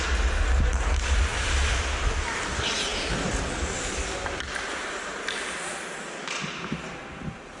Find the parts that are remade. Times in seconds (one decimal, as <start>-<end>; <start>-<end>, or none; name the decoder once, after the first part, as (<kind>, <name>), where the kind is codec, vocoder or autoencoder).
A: none